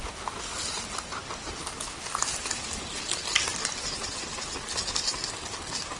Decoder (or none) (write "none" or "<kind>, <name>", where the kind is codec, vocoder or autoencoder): none